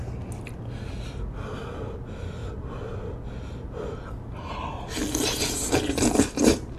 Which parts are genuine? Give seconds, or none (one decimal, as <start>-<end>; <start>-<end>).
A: 0.0-6.8